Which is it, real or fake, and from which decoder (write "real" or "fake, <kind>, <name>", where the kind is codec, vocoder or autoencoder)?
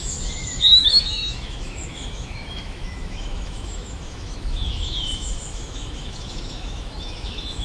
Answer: fake, autoencoder, DAC-VAE